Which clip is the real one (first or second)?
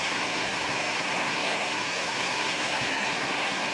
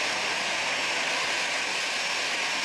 second